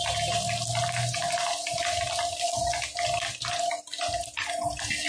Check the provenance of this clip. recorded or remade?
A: recorded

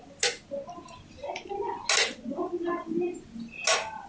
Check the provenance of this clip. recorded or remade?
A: recorded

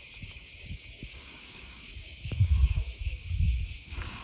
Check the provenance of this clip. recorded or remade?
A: remade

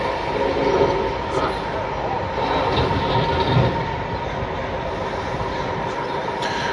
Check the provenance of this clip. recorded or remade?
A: recorded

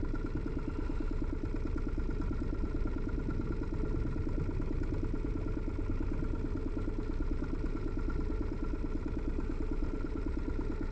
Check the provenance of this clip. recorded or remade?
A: recorded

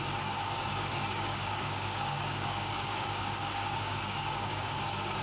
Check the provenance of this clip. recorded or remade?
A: remade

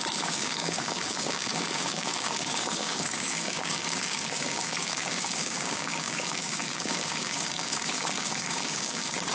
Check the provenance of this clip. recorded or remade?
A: remade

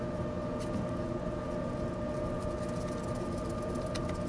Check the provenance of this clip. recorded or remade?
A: recorded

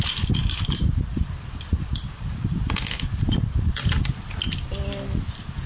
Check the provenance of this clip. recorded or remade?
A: recorded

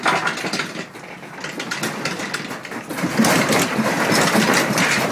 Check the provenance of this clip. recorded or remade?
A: recorded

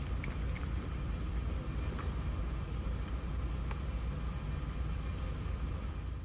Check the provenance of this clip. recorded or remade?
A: recorded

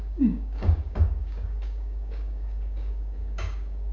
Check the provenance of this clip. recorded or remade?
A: remade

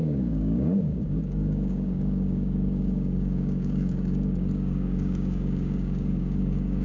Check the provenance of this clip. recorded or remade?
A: remade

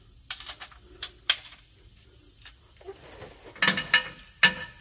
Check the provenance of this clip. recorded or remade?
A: recorded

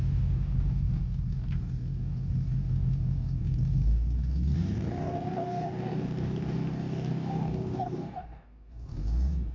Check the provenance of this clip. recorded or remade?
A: remade